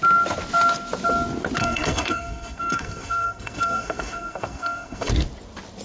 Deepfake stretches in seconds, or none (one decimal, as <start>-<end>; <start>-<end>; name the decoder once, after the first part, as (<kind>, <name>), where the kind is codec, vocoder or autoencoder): 1.6-5.1 (codec, SNAC)